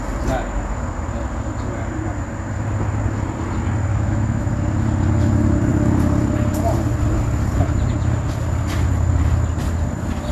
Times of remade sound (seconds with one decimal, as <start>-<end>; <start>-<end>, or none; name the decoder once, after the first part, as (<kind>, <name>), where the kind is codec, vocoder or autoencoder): 3.9-4.5 (autoencoder, DAC-VAE)